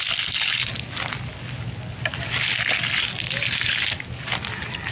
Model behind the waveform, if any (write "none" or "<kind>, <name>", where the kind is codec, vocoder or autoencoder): none